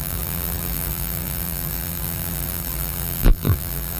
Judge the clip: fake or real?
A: fake